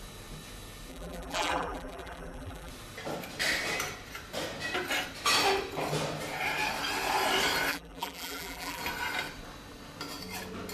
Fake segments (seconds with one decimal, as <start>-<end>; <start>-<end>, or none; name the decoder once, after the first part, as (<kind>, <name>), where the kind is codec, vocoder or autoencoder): 0.9-2.7 (vocoder, BigVGAN v2); 7.7-8.8